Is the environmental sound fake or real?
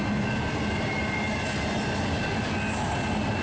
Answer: real